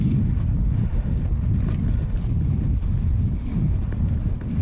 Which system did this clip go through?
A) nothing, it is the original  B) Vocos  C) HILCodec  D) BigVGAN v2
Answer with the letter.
A